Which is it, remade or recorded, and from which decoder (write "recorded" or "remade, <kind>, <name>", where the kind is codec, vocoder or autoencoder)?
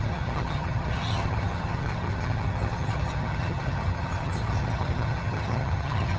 remade, vocoder, HiFi-GAN